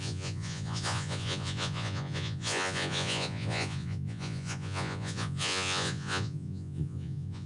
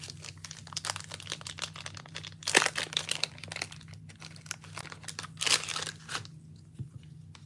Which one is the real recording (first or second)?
second